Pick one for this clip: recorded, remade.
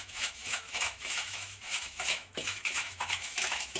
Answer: remade